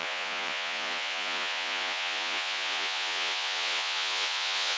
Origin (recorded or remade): remade